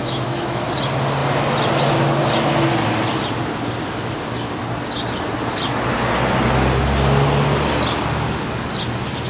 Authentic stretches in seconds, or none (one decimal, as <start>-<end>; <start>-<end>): 0.7-9.3